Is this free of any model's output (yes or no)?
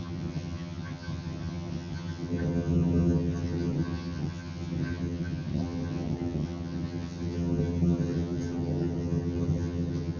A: no